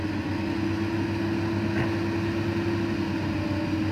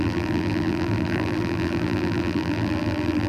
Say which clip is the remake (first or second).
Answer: second